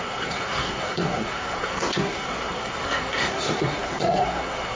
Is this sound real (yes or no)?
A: no